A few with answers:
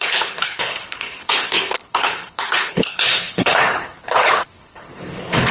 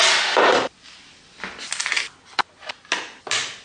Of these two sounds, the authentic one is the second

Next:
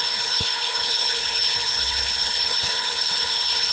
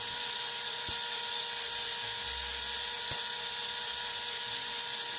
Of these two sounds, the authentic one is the second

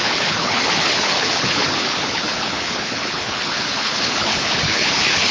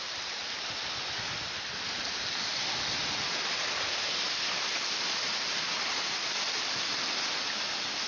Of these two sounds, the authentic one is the second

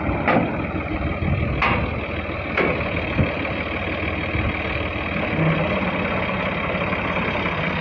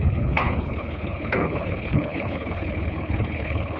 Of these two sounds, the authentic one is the first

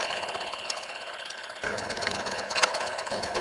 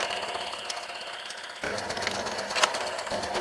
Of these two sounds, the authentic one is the second